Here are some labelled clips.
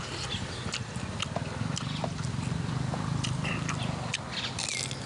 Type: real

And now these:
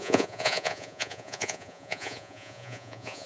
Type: fake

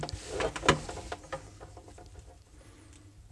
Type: real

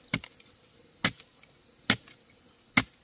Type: real